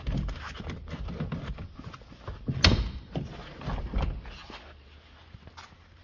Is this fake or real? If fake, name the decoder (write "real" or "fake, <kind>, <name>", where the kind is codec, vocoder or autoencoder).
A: real